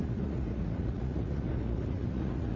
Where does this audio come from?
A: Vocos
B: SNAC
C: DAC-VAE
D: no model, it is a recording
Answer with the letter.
A